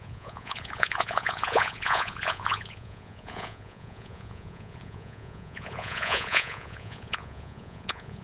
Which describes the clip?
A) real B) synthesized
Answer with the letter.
B